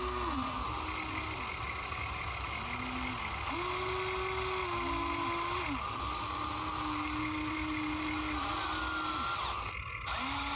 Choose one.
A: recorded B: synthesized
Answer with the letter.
A